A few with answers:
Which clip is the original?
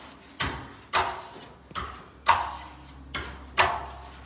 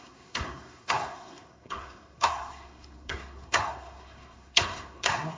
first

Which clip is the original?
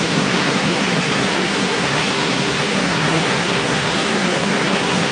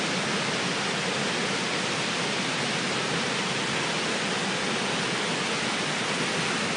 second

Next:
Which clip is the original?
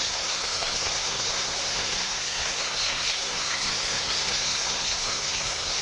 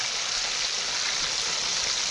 second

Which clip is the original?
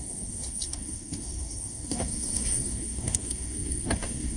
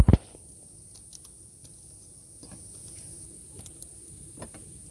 second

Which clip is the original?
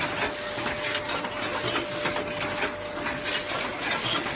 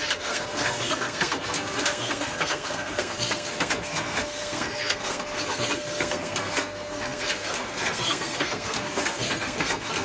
first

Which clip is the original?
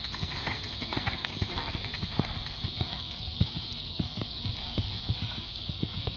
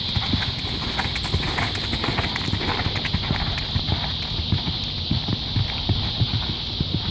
second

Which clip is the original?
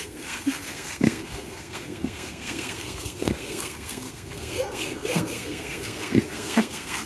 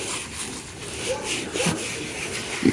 second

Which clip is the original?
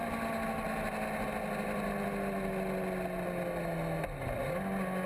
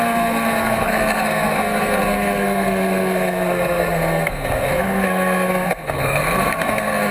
first